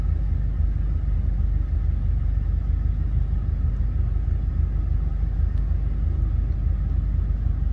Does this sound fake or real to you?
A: real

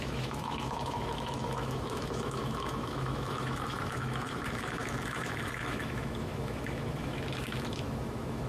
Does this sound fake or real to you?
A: fake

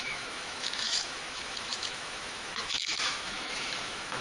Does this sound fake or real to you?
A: fake